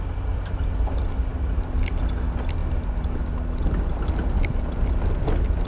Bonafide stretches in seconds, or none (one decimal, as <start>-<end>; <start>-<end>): 0.0-5.7